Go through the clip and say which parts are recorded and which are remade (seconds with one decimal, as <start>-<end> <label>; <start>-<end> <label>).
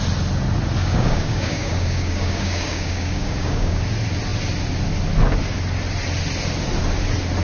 0.0-0.8 recorded; 0.8-3.8 remade; 3.8-7.4 recorded